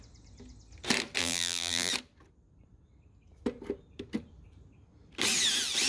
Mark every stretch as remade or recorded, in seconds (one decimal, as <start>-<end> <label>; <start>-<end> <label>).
0.0-1.2 recorded; 1.2-1.9 remade; 1.9-5.9 recorded